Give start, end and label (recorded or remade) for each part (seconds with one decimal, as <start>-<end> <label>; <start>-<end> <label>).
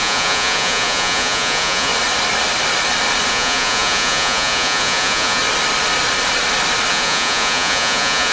0.0-1.9 remade; 1.9-3.3 recorded; 3.3-5.4 remade; 5.4-6.9 recorded; 6.9-8.3 remade